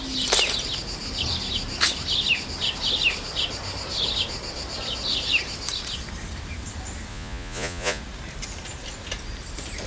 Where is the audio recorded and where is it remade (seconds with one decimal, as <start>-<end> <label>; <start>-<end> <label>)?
0.0-7.1 recorded; 7.1-8.0 remade; 8.0-9.9 recorded